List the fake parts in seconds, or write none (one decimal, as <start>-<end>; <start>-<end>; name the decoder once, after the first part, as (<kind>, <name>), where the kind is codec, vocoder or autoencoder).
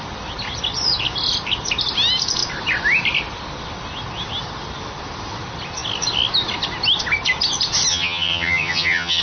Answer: 7.9-9.2 (vocoder, HiFi-GAN)